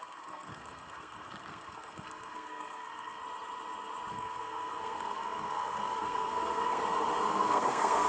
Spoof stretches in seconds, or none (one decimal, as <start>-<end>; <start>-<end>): 0.0-3.2; 4.1-6.8; 7.3-8.1